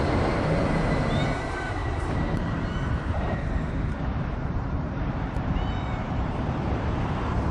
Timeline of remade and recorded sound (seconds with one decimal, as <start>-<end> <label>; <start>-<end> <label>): 0.0-7.5 remade